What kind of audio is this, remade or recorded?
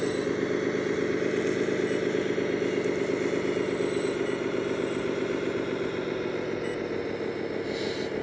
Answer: recorded